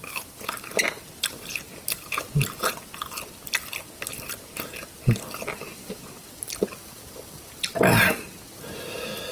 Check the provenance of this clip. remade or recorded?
recorded